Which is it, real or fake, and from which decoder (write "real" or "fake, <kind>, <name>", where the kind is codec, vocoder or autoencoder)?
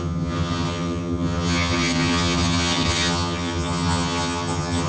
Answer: fake, vocoder, HiFi-GAN